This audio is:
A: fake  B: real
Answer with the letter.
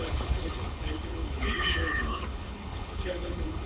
A